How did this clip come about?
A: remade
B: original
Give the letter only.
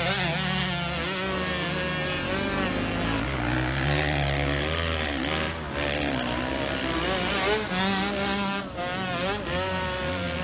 B